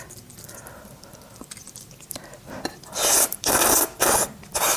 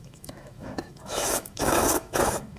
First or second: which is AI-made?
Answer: second